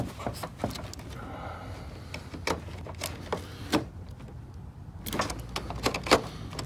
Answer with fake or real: real